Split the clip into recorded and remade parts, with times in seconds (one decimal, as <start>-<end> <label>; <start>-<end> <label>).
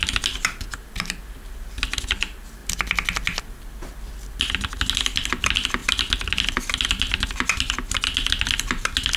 0.0-9.2 recorded